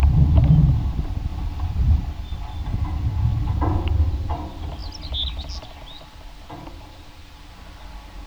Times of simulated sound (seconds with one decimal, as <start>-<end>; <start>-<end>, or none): 1.3-2.0; 3.3-4.3